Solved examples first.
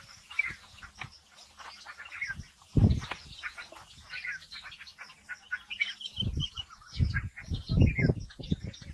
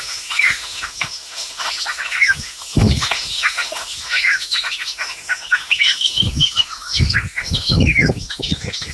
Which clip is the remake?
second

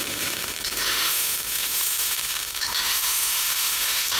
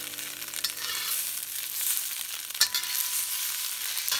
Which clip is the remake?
first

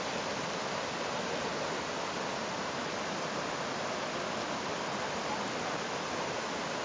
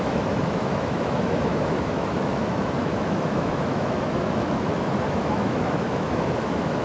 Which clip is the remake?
second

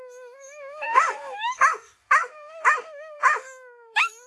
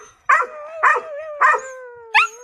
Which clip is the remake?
first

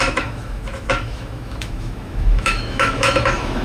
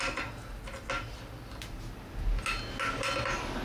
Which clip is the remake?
first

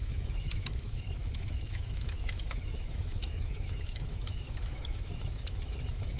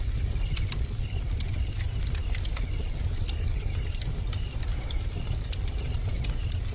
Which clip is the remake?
first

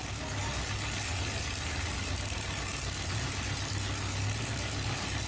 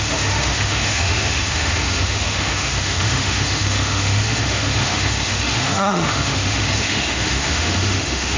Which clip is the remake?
second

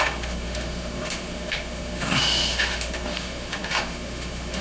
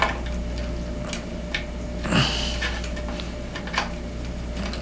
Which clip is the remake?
first